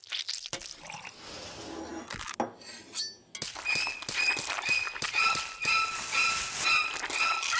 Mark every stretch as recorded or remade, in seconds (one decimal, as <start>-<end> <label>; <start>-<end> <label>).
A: 0.0-7.6 recorded